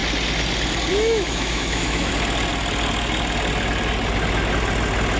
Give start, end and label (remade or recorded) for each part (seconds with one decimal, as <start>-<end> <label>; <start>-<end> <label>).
0.0-0.9 recorded; 0.9-2.1 remade; 2.1-5.2 recorded